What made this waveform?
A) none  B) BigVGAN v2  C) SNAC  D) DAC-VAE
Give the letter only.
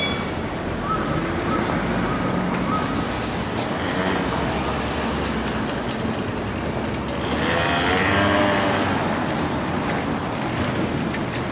A